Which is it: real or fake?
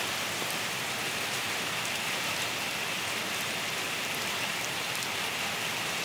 fake